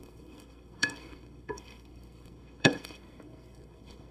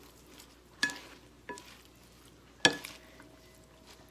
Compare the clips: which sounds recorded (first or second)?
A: second